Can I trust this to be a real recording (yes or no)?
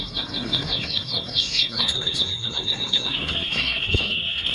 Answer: no